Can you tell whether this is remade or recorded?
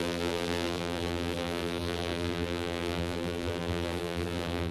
remade